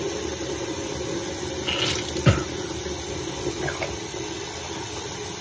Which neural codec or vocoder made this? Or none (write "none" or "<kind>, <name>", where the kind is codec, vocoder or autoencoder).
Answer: none